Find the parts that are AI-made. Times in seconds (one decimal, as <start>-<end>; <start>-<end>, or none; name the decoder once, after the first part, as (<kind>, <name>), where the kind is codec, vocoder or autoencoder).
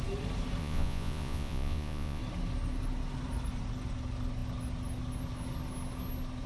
0.6-2.2 (vocoder, Vocos)